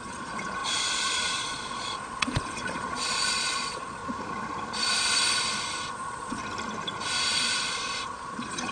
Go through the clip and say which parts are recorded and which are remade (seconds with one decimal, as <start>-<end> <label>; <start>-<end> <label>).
0.0-4.0 remade; 4.0-5.9 recorded; 5.9-6.4 remade; 6.4-7.7 recorded; 7.7-8.7 remade